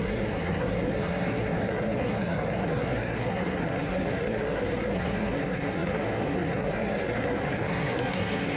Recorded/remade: remade